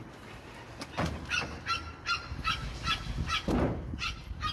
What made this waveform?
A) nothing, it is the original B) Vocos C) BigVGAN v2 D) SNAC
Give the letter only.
A